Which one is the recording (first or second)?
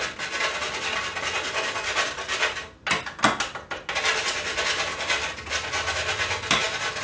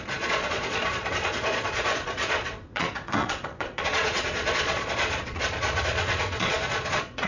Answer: first